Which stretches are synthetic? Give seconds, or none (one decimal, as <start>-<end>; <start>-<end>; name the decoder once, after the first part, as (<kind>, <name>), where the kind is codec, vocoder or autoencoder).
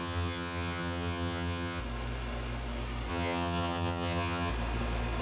0.0-1.8 (vocoder, HiFi-GAN); 3.1-4.5